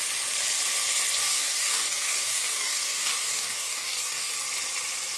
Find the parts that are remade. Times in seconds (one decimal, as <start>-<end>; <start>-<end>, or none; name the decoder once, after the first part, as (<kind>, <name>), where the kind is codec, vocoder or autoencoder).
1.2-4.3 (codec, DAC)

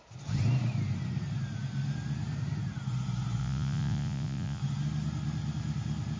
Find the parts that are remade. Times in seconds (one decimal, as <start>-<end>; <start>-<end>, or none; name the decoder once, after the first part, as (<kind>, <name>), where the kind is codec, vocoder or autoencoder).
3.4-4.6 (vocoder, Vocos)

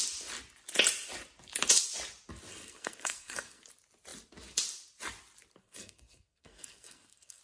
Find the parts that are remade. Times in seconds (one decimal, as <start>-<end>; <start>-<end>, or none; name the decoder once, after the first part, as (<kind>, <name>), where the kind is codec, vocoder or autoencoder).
2.5-3.6 (codec, SNAC); 5.6-7.4